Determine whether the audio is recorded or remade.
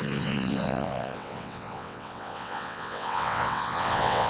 remade